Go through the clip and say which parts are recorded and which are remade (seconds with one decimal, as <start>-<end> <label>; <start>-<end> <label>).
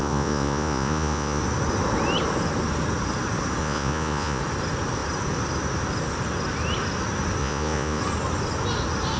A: 0.0-1.4 remade; 1.4-3.6 recorded; 3.6-4.4 remade; 4.4-7.4 recorded; 7.4-8.0 remade; 8.0-9.2 recorded